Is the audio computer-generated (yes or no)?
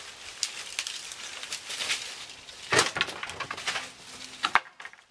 no